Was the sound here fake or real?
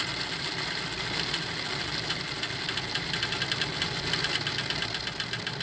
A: fake